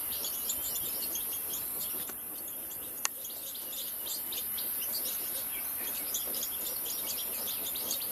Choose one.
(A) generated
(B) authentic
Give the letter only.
B